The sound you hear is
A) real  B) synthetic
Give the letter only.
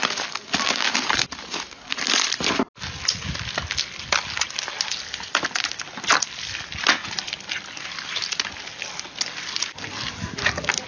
A